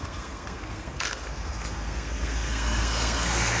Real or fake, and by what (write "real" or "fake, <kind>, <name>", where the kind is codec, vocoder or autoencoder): fake, codec, SNAC